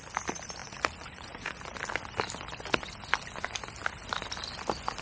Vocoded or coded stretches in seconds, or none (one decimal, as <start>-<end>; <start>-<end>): 0.6-1.6